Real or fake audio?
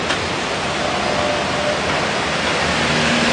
real